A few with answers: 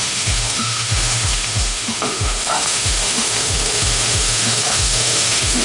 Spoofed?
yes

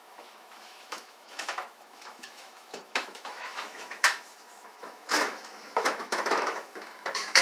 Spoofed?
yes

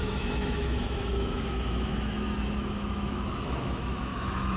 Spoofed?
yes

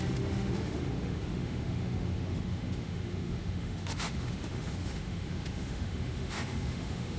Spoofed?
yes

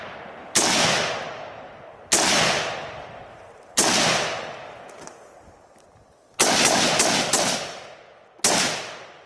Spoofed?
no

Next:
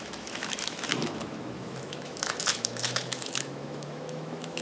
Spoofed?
yes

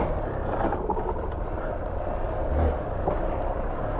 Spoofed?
no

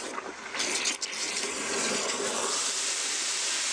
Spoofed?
no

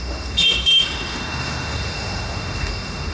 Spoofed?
yes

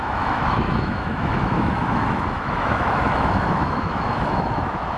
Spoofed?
yes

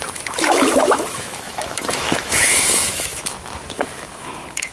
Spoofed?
yes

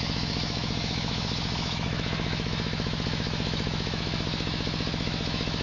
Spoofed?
yes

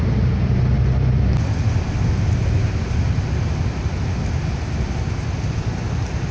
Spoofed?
no